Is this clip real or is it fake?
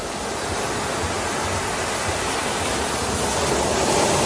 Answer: real